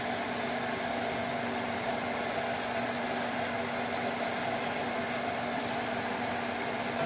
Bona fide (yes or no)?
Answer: yes